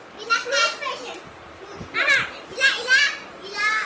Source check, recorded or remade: recorded